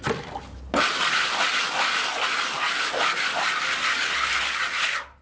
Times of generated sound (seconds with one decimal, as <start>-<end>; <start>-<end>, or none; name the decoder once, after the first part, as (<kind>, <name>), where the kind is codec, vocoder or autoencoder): none